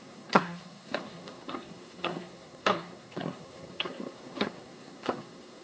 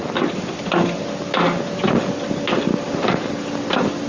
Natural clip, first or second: second